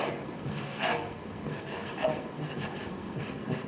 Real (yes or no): no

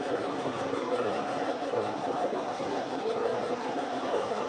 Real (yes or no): no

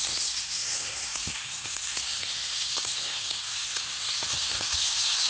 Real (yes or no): no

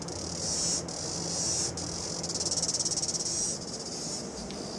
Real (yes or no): yes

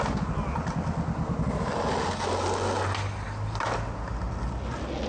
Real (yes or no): yes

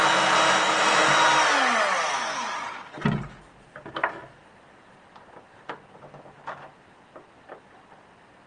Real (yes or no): yes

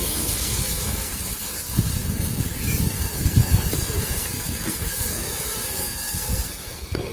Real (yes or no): no